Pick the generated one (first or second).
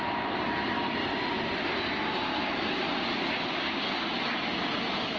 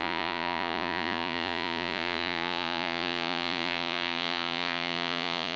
second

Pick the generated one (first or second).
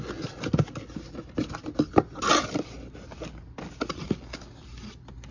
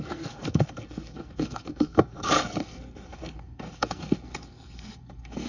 second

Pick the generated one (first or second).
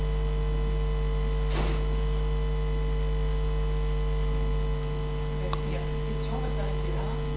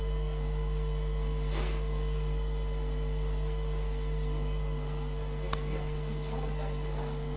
second